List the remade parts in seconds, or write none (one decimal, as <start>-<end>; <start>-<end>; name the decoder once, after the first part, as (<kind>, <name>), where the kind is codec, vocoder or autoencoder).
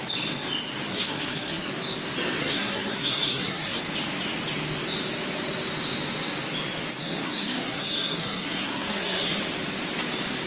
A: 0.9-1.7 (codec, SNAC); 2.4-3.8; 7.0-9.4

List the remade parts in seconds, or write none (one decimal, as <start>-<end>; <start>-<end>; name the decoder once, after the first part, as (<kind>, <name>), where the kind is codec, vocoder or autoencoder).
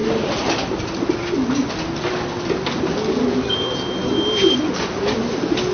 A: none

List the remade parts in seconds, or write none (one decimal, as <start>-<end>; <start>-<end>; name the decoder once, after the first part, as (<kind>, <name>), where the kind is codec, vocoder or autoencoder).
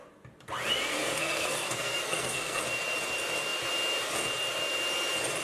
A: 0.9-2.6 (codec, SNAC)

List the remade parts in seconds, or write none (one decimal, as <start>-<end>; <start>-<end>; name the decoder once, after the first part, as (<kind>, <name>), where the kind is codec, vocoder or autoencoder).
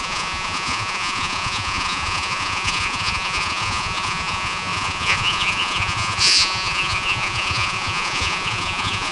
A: 0.0-9.1 (vocoder, Vocos)